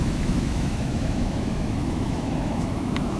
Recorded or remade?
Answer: remade